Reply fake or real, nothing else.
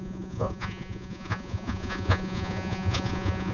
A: fake